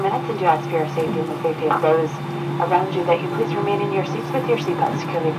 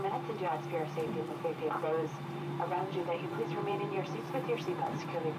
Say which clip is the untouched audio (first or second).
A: first